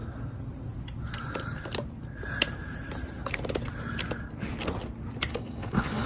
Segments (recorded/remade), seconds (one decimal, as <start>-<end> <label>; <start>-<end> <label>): 0.0-5.3 recorded; 5.3-6.1 remade